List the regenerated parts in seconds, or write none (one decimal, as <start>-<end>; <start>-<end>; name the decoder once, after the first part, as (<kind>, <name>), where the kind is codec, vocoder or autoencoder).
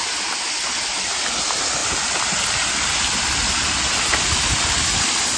none